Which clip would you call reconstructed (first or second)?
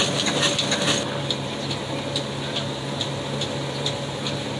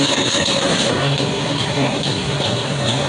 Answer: second